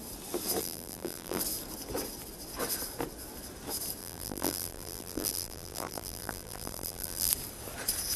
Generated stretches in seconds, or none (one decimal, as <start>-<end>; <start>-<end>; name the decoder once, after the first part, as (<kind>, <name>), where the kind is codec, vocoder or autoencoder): 0.6-1.4 (vocoder, BigVGAN v2); 4.0-7.3